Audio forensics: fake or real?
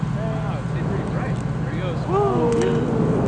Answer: real